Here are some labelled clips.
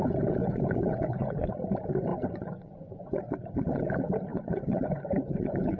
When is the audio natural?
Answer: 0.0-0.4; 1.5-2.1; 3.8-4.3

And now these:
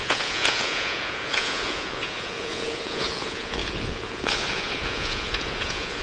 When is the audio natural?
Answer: none

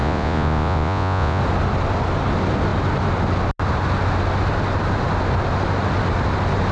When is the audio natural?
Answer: 1.4-6.7